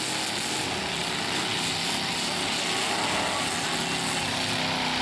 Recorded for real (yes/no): yes